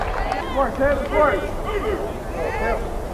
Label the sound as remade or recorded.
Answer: recorded